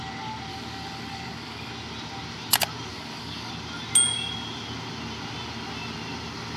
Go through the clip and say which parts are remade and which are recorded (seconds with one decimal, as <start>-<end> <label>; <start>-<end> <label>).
0.0-0.5 recorded; 0.5-1.7 remade; 1.7-2.9 recorded; 2.9-3.5 remade; 3.5-6.6 recorded